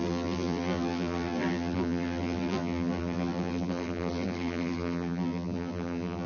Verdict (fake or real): fake